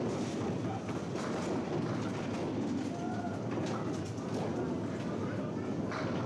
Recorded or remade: recorded